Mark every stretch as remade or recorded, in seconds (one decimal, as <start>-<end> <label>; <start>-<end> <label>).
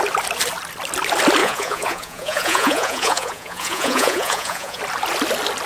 0.0-1.4 recorded; 1.4-4.8 remade; 4.8-5.7 recorded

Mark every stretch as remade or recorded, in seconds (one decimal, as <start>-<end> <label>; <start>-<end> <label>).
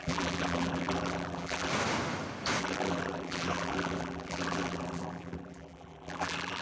0.0-1.7 remade; 1.7-2.6 recorded; 2.6-6.6 remade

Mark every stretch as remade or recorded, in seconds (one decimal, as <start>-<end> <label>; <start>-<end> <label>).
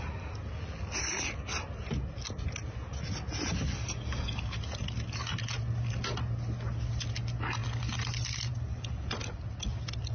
0.0-10.1 recorded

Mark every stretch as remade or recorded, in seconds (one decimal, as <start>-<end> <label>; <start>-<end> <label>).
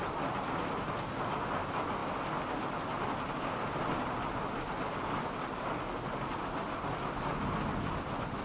0.0-8.4 recorded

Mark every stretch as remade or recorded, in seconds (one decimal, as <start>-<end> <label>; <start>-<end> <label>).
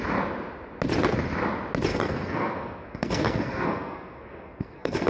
0.0-1.9 recorded; 1.9-5.1 remade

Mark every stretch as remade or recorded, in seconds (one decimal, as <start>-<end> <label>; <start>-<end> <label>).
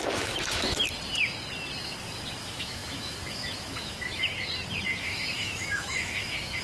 0.0-0.8 remade; 0.8-2.4 recorded; 2.4-4.3 remade; 4.3-5.0 recorded; 5.0-6.6 remade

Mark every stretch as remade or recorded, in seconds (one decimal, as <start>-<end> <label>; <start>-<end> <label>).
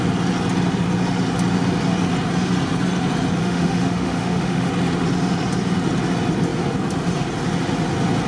0.0-3.4 recorded; 3.4-4.7 remade; 4.7-8.3 recorded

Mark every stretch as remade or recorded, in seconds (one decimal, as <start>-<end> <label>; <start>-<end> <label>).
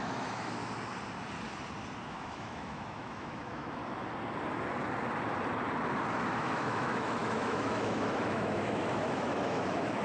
0.0-0.6 remade; 0.6-2.1 recorded; 2.1-3.8 remade; 3.8-6.4 recorded; 6.4-10.0 remade